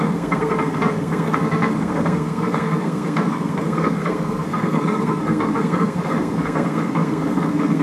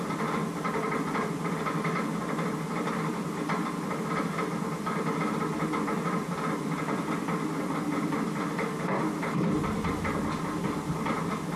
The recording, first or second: second